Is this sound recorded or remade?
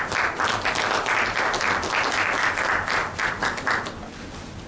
recorded